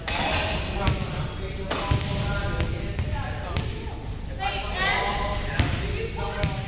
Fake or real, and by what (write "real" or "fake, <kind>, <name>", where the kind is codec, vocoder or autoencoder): real